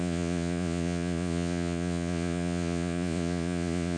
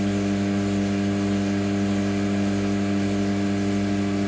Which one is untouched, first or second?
second